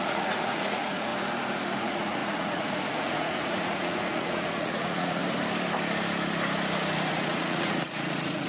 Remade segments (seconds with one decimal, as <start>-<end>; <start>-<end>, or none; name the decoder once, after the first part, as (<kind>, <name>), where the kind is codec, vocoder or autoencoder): 0.0-1.1 (vocoder, Vocos); 1.8-5.2; 7.1-8.5